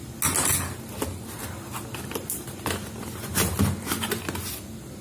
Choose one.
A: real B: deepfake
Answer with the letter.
A